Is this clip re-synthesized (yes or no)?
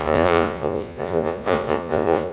yes